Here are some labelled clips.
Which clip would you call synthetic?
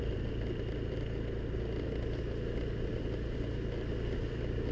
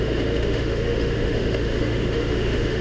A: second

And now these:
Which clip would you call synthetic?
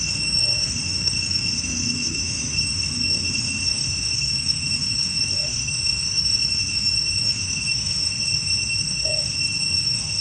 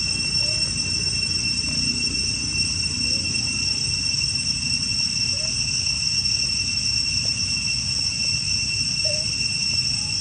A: first